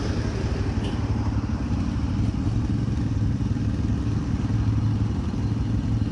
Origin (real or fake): real